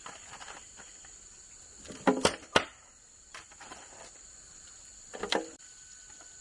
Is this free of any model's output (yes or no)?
yes